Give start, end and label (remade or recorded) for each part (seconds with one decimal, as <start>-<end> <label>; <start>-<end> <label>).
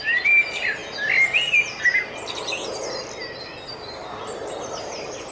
0.0-5.3 recorded